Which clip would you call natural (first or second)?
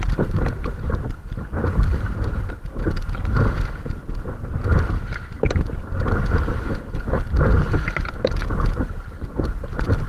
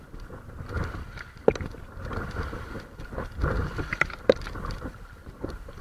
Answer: first